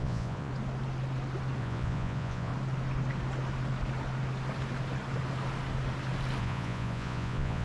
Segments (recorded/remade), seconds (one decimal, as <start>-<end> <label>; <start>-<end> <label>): 0.0-0.5 remade; 0.5-1.6 recorded; 1.6-2.5 remade; 2.5-6.4 recorded; 6.4-7.6 remade